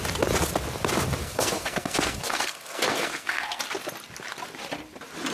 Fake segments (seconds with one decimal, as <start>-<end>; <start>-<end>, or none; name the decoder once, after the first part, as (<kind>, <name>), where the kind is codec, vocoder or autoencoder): 1.2-3.6 (codec, SNAC)